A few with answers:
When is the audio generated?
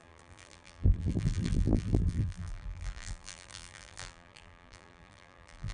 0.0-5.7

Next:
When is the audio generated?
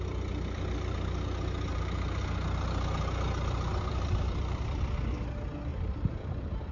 1.7-2.2; 3.9-4.8; 5.7-6.7